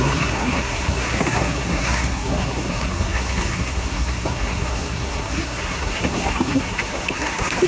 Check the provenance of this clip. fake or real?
fake